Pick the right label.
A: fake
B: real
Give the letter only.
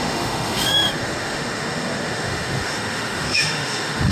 A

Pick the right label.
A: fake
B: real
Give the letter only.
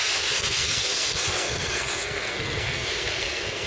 A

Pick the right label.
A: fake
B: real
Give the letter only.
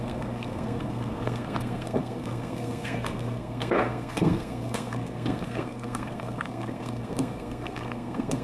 A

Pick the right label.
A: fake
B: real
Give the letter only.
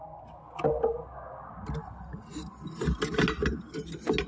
B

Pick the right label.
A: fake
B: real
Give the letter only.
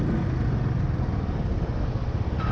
B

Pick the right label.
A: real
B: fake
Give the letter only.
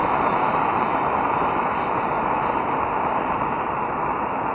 A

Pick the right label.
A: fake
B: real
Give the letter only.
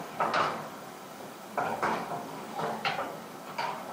A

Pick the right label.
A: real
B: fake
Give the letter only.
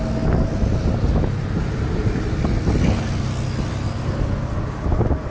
A